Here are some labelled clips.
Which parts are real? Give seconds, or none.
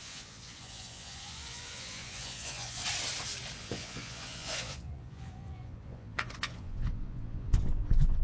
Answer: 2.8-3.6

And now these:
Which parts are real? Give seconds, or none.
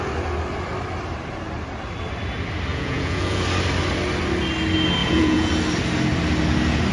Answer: 0.0-2.7; 3.4-5.0; 5.5-6.9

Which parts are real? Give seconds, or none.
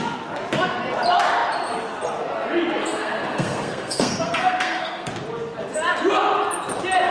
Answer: 0.0-2.8; 5.1-7.1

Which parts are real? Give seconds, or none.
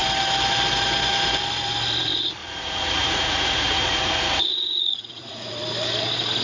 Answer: 0.0-2.4; 5.5-6.4